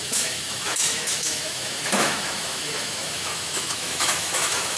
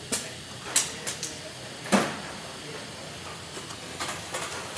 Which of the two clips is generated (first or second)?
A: first